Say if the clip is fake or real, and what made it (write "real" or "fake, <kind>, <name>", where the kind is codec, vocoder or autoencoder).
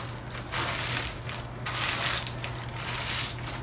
real